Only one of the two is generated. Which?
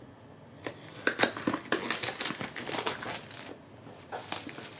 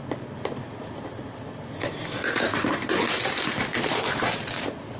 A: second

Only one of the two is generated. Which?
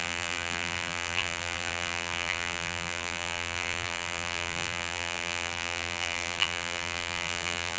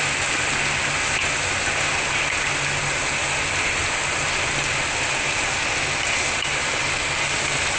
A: first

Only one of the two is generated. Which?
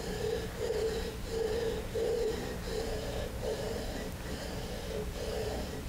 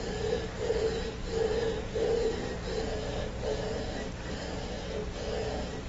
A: first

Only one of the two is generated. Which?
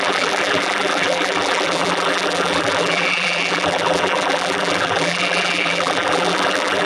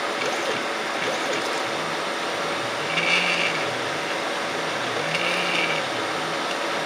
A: first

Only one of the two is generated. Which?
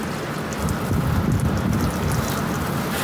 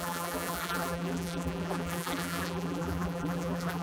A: second